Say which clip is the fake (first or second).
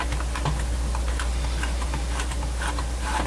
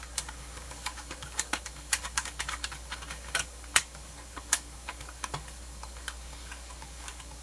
second